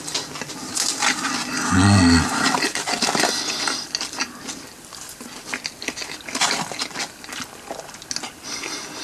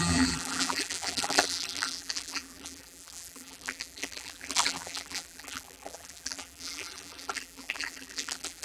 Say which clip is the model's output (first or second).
second